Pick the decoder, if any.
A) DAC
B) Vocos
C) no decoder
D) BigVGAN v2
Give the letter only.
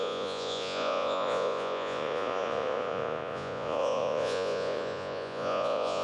B